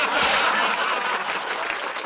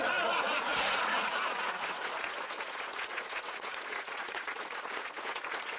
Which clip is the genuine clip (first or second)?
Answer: first